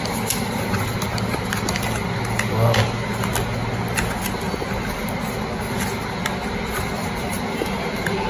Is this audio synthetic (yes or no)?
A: no